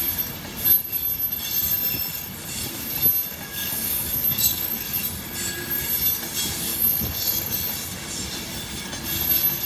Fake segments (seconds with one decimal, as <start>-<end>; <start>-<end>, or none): 3.3-5.0; 6.7-7.5